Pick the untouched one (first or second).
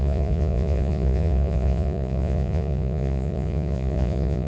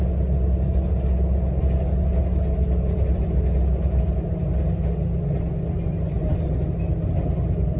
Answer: second